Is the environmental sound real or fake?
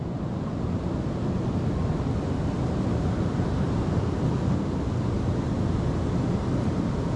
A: real